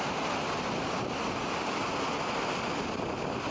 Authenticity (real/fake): real